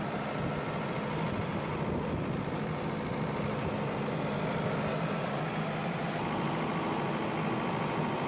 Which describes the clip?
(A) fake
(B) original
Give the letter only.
B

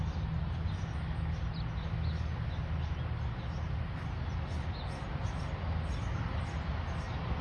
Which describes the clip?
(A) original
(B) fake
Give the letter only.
A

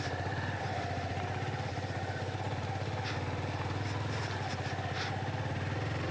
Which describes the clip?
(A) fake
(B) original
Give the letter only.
B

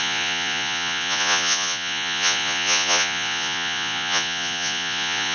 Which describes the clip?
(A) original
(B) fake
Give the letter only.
B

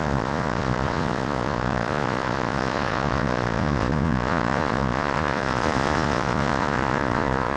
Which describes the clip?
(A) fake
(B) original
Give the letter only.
A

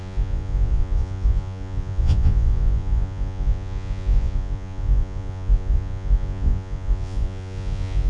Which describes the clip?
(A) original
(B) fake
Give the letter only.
B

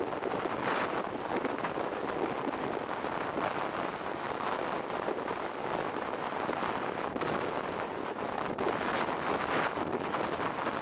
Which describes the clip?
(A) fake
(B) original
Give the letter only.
B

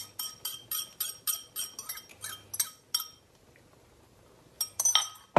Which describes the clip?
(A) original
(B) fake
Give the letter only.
A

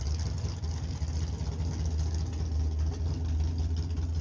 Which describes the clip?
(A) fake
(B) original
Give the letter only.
B